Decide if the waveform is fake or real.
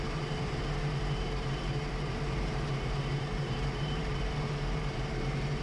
fake